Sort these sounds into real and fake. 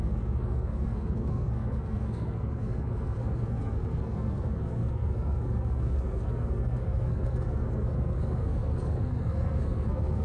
fake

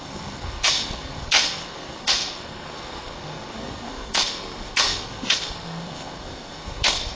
fake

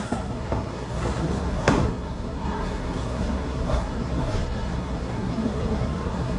fake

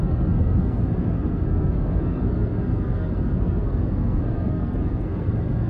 fake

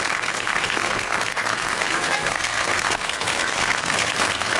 fake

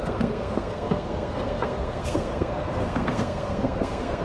fake